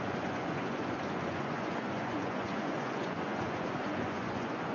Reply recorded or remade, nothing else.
remade